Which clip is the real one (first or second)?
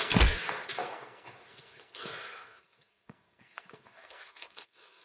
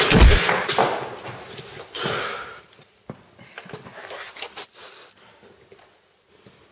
second